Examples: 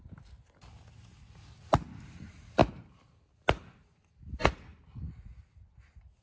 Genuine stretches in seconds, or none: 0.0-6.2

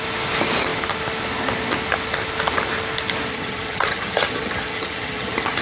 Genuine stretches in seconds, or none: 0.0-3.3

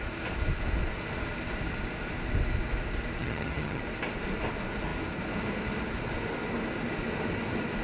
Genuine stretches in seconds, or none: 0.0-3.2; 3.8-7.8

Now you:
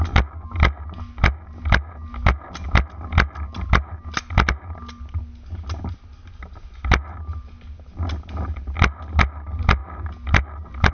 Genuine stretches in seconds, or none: 0.0-10.9

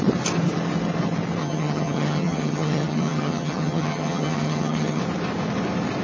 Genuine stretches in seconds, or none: 0.0-1.4; 5.0-6.0

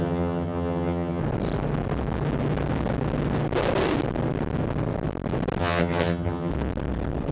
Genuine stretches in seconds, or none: 1.2-5.6; 6.5-7.3